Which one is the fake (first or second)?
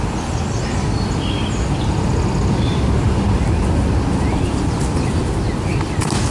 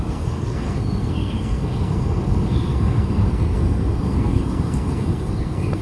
second